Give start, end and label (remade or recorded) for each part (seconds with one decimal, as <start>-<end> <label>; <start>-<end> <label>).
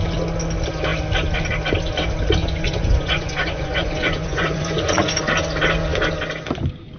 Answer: 0.0-2.4 recorded; 2.4-5.2 remade; 5.2-7.0 recorded